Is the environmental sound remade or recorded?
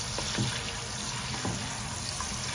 recorded